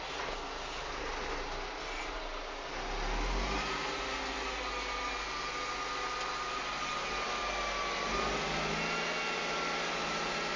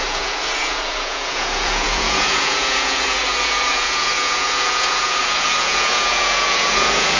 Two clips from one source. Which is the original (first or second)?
first